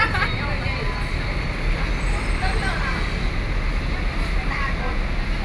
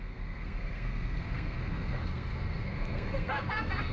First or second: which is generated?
second